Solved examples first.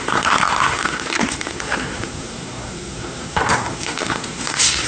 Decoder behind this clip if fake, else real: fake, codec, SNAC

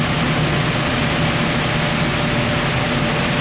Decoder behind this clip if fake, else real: real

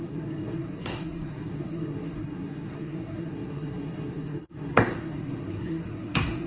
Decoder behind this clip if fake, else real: fake, codec, SNAC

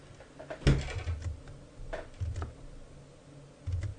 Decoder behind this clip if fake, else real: real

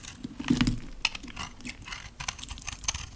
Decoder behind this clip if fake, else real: real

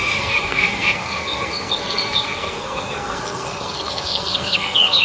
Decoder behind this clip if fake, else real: fake, codec, SNAC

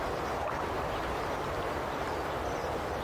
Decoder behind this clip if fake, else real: real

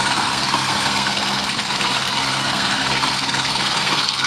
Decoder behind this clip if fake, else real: fake, codec, SNAC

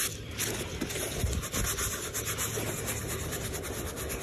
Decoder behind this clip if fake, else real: real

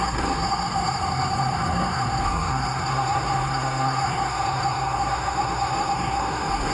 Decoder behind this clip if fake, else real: fake, codec, SNAC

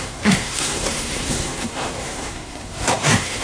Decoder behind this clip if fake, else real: fake, codec, SNAC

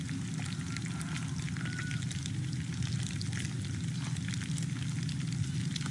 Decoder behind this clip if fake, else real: real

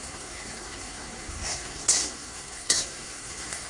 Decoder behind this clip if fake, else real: fake, codec, SNAC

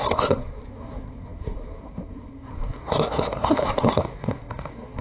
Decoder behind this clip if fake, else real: fake, codec, SNAC